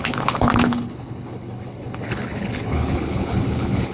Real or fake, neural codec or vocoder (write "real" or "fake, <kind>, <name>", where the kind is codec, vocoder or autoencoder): fake, codec, HILCodec